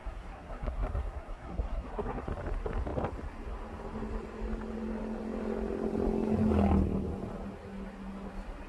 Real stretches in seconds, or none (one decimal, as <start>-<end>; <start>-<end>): 2.3-8.7